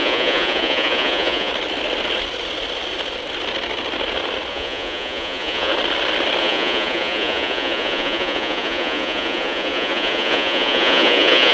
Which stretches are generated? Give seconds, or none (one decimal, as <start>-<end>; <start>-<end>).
0.0-1.5; 4.5-5.7; 6.4-11.5